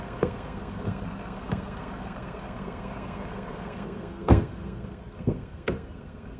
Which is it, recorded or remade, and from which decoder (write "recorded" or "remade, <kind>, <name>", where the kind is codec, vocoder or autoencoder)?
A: remade, codec, SNAC